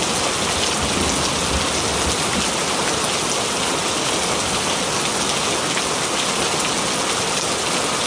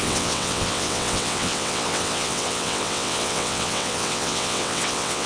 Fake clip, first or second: second